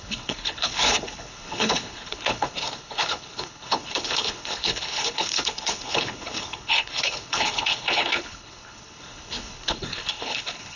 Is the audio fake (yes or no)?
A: yes